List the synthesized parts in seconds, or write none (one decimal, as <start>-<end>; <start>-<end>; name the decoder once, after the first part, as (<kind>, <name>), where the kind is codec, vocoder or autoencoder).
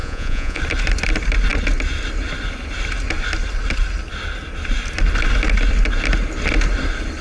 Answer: 0.0-0.6 (vocoder, Vocos)